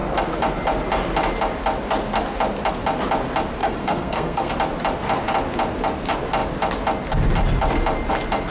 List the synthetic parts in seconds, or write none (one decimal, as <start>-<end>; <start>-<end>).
3.6-4.5